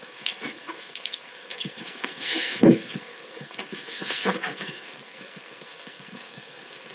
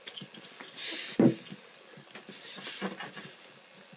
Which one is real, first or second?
second